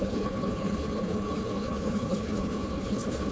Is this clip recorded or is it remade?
remade